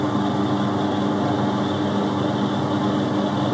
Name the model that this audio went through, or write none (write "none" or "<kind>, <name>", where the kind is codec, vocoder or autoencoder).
none